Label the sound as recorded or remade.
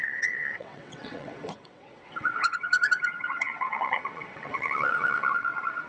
remade